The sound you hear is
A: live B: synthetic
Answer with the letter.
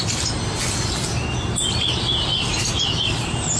A